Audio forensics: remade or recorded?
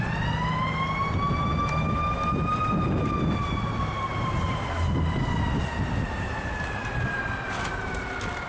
recorded